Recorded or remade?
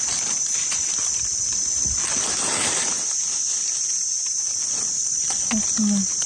recorded